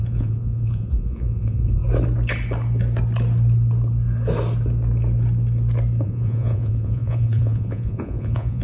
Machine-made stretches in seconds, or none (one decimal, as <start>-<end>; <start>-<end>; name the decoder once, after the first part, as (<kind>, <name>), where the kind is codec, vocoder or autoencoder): 0.0-1.8 (vocoder, Vocos); 6.0-8.6